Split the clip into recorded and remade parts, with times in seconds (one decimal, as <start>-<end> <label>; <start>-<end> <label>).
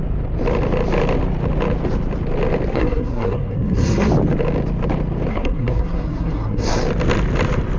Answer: 0.0-2.7 recorded; 2.7-4.1 remade; 4.1-5.3 recorded; 5.3-6.8 remade; 6.8-7.8 recorded